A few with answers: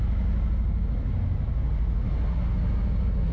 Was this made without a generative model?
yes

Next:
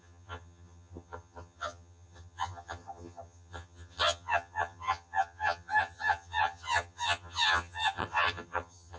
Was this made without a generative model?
no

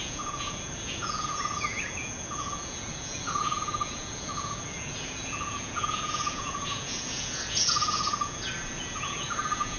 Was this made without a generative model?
no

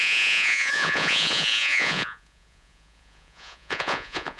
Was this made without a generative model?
no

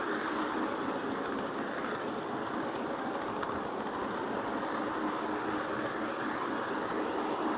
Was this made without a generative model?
yes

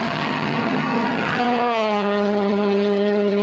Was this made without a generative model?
no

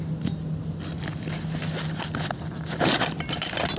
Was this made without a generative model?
yes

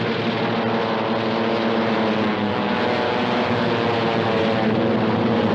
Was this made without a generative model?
yes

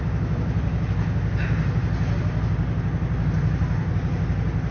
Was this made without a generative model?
yes